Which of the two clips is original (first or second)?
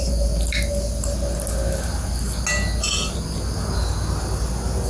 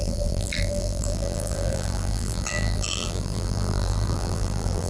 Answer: first